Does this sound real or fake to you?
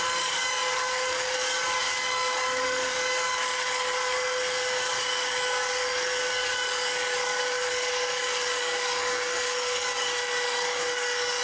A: fake